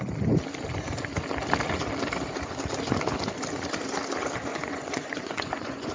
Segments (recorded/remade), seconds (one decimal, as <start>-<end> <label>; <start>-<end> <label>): 0.0-4.5 recorded; 4.5-5.9 remade